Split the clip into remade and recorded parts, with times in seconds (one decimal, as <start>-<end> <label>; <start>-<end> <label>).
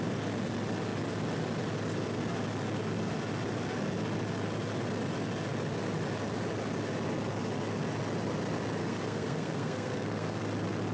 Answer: 0.0-8.8 recorded; 8.8-10.4 remade; 10.4-10.9 recorded